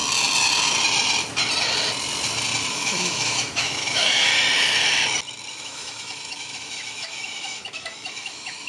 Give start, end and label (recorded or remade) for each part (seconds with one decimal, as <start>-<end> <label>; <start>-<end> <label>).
0.0-2.7 recorded; 2.7-4.3 remade; 4.3-5.5 recorded; 5.5-8.7 remade